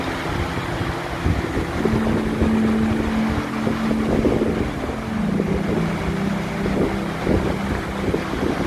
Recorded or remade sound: recorded